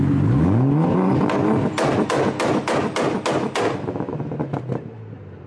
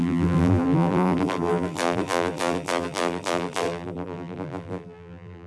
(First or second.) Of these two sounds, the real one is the first